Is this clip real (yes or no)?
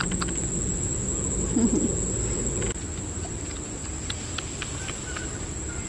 yes